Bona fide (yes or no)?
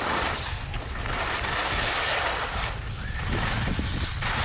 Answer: yes